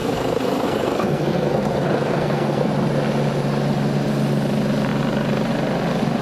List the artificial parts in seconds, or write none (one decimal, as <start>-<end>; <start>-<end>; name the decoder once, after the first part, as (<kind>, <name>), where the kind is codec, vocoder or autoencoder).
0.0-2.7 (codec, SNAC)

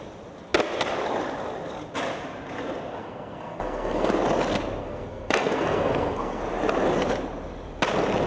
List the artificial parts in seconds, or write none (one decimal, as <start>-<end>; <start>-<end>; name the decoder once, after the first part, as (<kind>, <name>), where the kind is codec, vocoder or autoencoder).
3.0-4.1 (codec, SNAC); 4.8-6.4

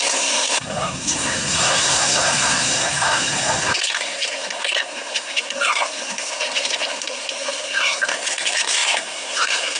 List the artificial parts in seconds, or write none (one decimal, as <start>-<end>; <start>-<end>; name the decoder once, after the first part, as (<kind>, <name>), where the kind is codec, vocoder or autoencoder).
0.0-9.8 (codec, SNAC)

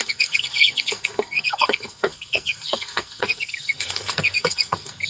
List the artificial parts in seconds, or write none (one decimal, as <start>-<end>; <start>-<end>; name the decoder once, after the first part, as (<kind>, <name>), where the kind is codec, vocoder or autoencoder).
0.0-5.1 (codec, SNAC)

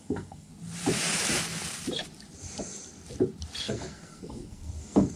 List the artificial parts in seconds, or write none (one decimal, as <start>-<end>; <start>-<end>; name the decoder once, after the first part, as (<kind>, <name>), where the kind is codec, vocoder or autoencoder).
0.0-0.5 (codec, SNAC); 3.6-5.2